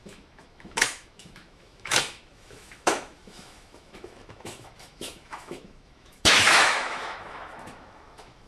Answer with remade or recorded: remade